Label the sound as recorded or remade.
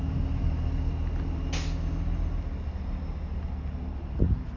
recorded